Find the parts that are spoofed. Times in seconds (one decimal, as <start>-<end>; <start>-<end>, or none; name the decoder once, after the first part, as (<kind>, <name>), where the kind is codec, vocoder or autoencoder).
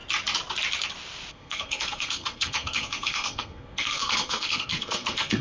1.3-5.4 (codec, SNAC)